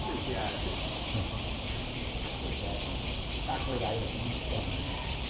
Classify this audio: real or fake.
fake